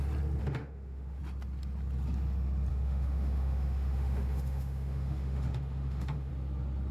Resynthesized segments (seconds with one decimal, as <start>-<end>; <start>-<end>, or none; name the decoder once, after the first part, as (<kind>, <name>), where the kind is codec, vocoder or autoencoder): 0.4-1.2 (autoencoder, DAC-VAE); 2.7-6.3